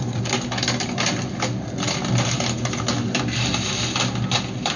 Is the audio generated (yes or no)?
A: no